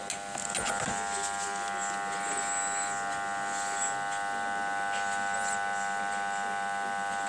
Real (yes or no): yes